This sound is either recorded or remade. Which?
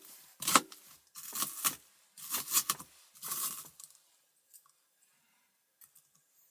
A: recorded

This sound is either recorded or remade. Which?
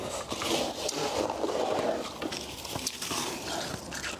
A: recorded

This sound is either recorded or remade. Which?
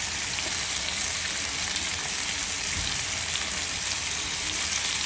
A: recorded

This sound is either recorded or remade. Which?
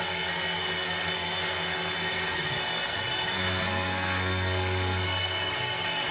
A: remade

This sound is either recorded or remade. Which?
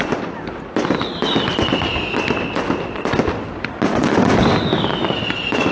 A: recorded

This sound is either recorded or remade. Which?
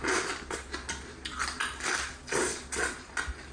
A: recorded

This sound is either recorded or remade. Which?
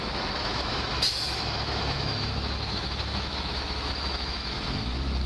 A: remade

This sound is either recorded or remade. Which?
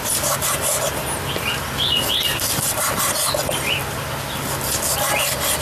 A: recorded